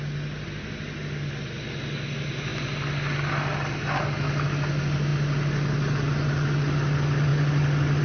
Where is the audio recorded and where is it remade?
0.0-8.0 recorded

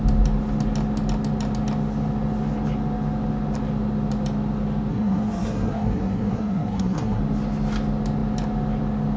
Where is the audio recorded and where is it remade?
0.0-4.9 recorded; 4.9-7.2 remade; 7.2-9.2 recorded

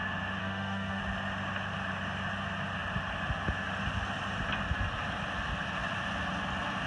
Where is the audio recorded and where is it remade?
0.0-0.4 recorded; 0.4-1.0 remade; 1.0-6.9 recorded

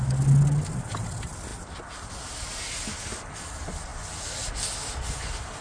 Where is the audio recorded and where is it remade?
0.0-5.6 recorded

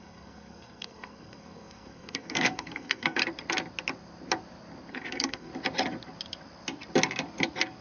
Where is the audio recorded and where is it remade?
0.0-3.2 remade; 3.2-4.9 recorded; 4.9-5.5 remade; 5.5-7.8 recorded

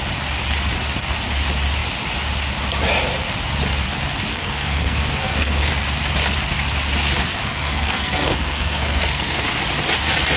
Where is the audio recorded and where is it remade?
0.0-4.3 recorded; 4.3-5.7 remade; 5.7-7.4 recorded; 7.4-9.4 remade; 9.4-10.4 recorded